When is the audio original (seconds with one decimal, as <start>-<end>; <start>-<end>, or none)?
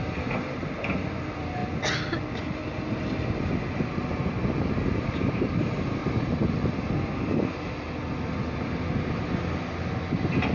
0.0-10.5